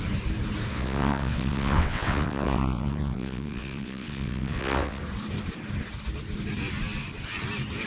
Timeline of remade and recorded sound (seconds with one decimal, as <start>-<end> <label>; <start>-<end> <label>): 0.0-0.7 recorded; 0.7-5.0 remade; 5.0-7.9 recorded